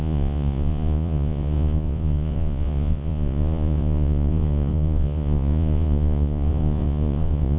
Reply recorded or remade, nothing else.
remade